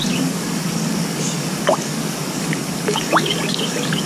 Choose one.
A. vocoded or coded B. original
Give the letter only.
A